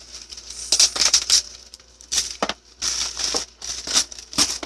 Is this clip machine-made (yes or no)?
no